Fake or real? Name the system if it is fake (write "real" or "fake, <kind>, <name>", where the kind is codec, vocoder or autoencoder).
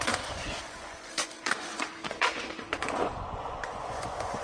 fake, vocoder, Vocos